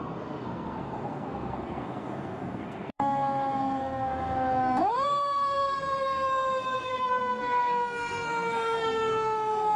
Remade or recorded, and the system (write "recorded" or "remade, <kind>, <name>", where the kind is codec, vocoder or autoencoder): remade, codec, SNAC